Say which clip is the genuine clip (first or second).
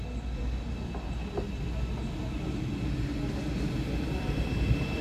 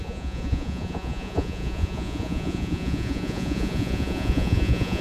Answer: first